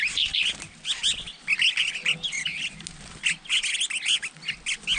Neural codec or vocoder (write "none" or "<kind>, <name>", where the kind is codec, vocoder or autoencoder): none